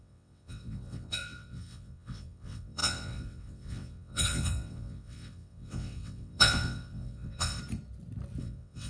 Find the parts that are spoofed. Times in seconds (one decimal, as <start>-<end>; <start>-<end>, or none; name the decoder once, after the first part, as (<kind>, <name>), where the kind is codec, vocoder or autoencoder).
0.0-7.6 (vocoder, WaveNeXt); 8.4-8.9